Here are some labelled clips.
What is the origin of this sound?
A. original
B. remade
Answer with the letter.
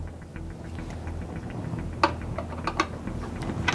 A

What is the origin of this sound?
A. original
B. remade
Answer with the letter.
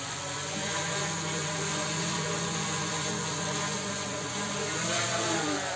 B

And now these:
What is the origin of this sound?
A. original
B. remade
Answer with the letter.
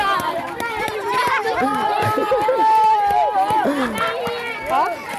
A